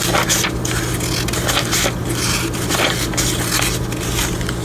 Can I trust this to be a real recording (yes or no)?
yes